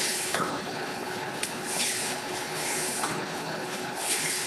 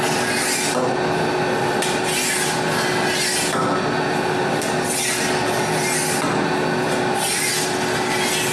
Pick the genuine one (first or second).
second